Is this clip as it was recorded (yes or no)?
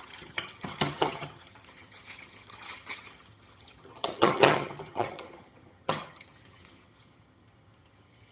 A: no